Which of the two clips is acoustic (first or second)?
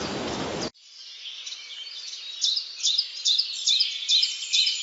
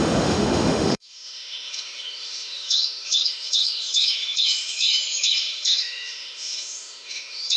first